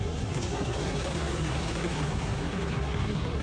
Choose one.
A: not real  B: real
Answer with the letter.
A